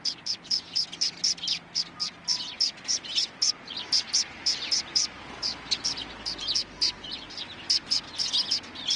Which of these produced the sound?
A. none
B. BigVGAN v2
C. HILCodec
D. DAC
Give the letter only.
A